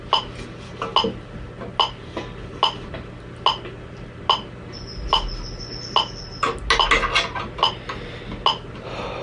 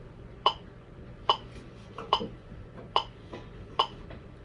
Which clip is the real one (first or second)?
first